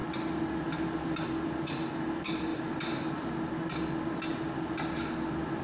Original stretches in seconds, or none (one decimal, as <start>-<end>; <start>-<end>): 0.0-2.5; 3.1-5.6